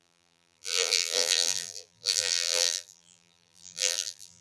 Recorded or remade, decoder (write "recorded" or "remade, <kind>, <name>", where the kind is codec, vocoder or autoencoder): remade, vocoder, BigVGAN v2